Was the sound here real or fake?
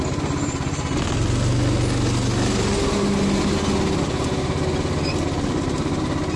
real